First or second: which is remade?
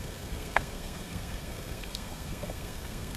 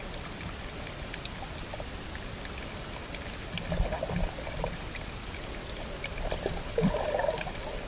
first